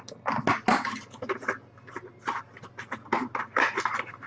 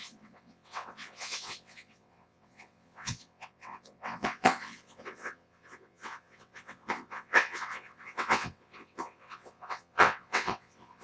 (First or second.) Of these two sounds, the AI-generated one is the second